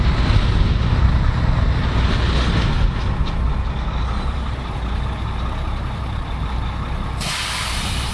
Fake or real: real